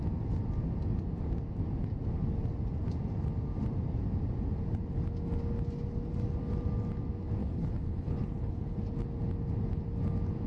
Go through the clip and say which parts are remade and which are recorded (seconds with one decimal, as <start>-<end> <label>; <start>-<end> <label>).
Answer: 0.0-7.4 recorded; 7.4-8.8 remade; 8.8-10.5 recorded